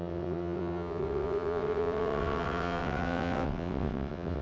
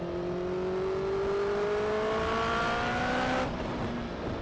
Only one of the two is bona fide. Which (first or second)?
second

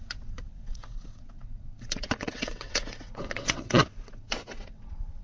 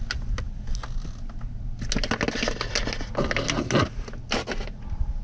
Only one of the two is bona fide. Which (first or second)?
second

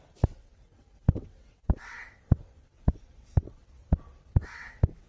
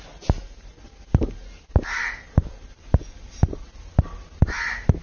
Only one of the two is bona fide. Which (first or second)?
second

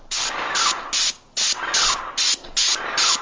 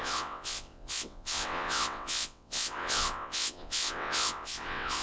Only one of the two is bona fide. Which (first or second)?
first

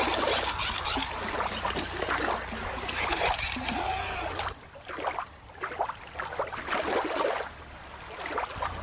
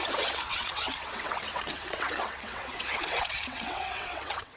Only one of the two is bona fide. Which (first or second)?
first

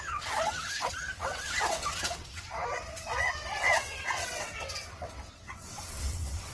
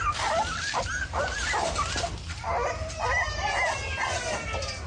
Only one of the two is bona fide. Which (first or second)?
second